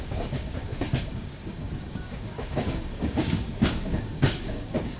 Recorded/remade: remade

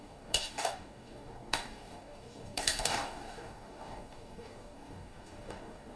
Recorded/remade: remade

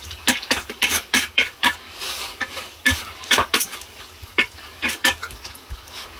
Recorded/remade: remade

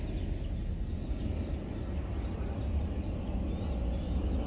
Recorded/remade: recorded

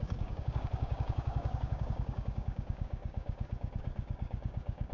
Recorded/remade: remade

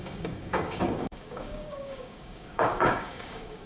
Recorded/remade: remade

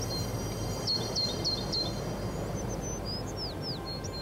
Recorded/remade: recorded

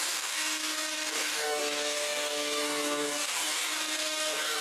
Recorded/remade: remade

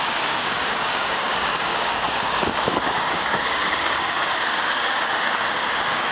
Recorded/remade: remade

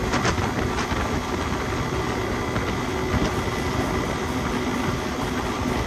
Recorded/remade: recorded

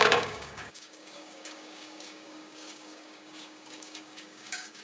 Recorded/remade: remade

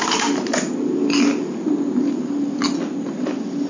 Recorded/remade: recorded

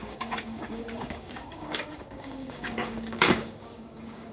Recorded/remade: remade